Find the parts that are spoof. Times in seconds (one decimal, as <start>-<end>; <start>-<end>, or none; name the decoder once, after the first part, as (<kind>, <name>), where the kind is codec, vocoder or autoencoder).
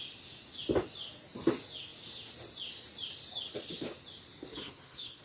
4.5-5.2 (codec, HILCodec)